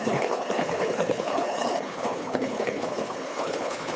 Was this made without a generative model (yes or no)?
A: no